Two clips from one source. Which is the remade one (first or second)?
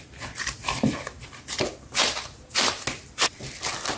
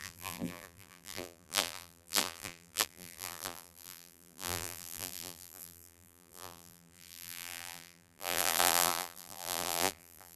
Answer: second